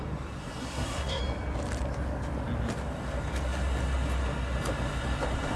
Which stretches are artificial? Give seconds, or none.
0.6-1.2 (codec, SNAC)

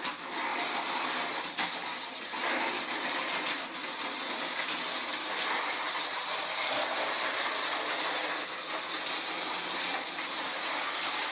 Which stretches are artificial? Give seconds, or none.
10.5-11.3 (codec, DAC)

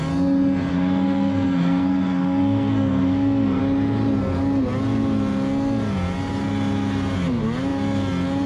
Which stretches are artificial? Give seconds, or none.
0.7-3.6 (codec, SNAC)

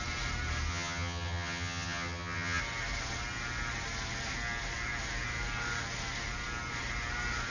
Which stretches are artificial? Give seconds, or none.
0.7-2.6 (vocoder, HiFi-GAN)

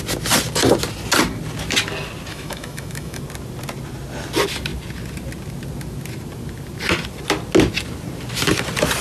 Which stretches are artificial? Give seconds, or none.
2.3-3.2 (autoencoder, DAC-VAE)